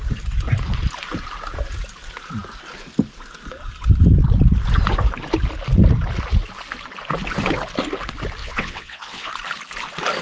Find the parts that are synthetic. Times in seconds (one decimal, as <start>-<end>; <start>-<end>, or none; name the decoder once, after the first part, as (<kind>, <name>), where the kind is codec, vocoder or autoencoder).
8.4-9.3 (vocoder, WaveNeXt)